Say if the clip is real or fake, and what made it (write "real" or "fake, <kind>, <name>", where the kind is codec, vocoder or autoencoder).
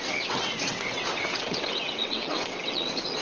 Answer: fake, vocoder, WaveNeXt